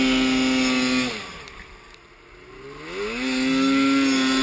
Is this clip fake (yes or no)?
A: no